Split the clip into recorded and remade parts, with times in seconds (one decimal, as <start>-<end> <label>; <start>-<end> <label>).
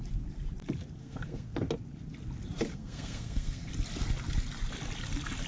0.0-1.0 recorded; 1.0-1.7 remade; 1.7-2.7 recorded; 2.7-3.7 remade; 3.7-5.5 recorded